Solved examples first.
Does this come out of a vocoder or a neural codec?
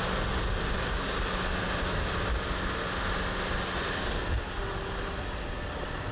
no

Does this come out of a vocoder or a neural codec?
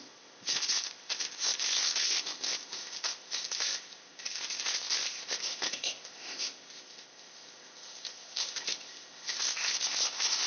yes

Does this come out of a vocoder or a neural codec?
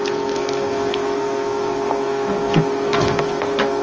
yes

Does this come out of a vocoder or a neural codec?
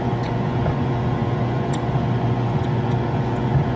yes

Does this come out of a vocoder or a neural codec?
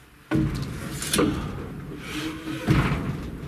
no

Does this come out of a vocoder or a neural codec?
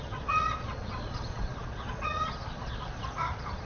yes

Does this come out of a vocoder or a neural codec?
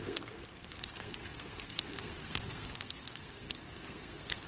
yes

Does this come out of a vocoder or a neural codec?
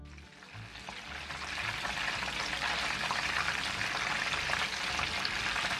no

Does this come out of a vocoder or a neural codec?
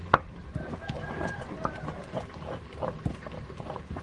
no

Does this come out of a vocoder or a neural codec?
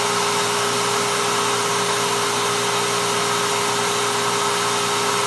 no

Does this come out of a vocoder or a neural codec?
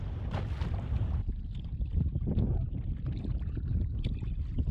no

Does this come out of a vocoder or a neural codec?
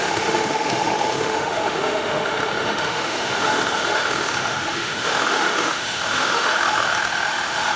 yes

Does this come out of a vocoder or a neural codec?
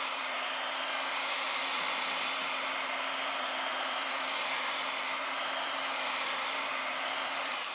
yes